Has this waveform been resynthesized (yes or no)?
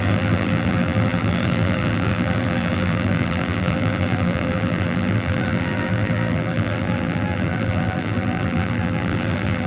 yes